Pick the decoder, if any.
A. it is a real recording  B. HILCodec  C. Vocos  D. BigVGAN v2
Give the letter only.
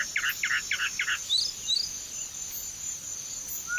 A